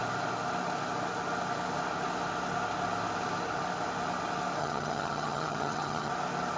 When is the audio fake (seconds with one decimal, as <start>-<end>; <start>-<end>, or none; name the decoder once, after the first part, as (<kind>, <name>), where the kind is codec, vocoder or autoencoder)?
4.6-6.1 (vocoder, HiFi-GAN)